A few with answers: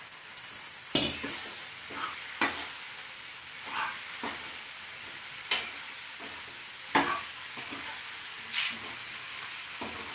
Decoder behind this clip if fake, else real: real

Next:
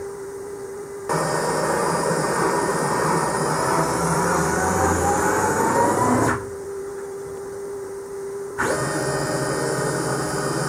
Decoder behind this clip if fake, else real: fake, vocoder, BigVGAN v2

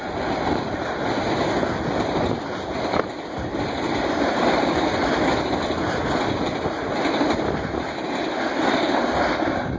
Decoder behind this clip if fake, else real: real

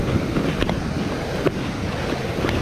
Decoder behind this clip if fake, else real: real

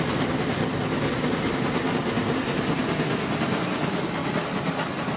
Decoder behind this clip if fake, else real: real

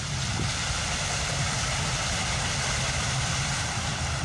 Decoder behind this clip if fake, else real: fake, vocoder, BigVGAN v2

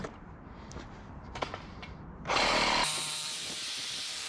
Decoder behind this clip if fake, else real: fake, vocoder, BigVGAN v2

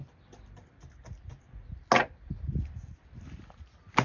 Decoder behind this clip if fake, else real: real